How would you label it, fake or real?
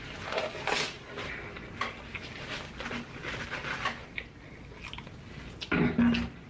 real